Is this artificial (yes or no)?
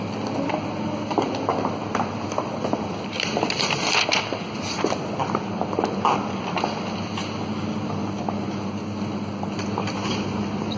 no